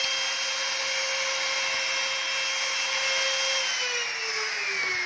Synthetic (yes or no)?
no